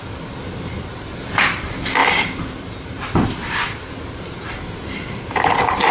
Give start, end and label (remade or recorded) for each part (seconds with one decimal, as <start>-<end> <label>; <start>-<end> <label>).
0.0-2.0 recorded; 2.0-3.9 remade; 3.9-5.9 recorded